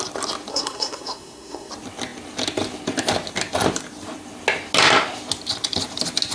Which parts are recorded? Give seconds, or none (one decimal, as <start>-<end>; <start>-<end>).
0.0-0.5; 1.7-6.3